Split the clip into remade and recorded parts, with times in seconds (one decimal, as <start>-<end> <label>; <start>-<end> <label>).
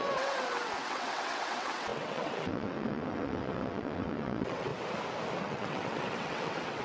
0.0-4.7 remade; 4.7-5.4 recorded; 5.4-6.8 remade